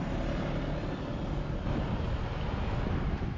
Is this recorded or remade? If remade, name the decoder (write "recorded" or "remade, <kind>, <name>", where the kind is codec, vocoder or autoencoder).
recorded